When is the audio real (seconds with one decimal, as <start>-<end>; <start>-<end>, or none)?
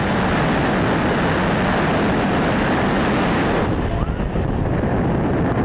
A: 0.0-5.6